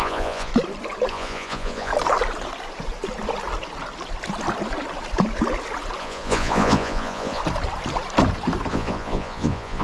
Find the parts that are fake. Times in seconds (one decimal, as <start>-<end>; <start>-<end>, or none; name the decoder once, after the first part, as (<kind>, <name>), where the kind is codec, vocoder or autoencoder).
0.0-0.5 (vocoder, Vocos); 1.1-1.9; 6.0-7.4; 8.7-9.8